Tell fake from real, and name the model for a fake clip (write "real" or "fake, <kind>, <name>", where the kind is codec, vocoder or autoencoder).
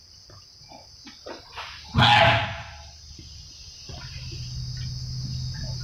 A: real